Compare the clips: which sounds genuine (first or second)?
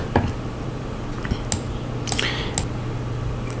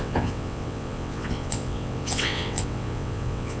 first